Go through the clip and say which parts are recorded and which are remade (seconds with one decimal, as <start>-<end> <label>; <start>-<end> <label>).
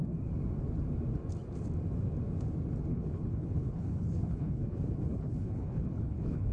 0.0-2.9 recorded; 2.9-6.5 remade